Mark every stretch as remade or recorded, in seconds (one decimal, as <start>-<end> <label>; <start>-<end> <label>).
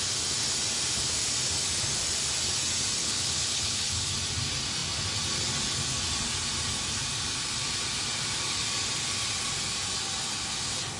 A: 0.0-3.0 recorded; 3.0-4.1 remade; 4.1-11.0 recorded